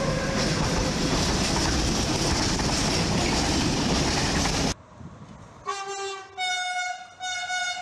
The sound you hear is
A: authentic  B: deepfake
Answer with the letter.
A